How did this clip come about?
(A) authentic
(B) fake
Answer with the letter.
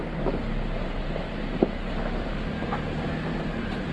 A